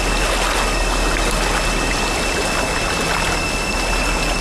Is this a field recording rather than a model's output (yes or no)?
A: yes